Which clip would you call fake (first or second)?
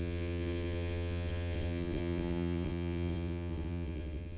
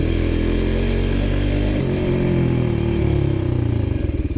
first